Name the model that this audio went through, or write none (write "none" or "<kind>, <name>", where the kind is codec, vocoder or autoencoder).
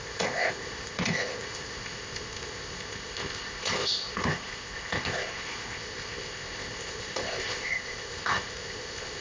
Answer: codec, ZipCodec